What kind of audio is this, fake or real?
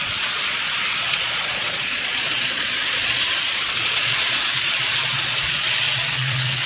fake